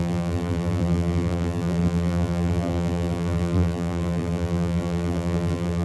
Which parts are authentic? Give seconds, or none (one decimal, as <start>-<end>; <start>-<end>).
none